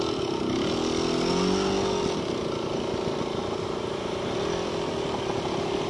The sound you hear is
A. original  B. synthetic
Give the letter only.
A